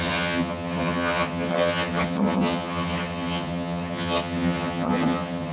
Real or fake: fake